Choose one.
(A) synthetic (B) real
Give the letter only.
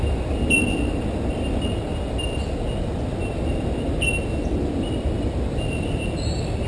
B